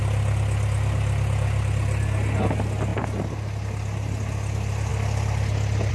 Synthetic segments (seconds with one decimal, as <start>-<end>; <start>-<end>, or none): none